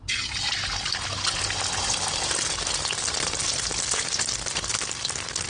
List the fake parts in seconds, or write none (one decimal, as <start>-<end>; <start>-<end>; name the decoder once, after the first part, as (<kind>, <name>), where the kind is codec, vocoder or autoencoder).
none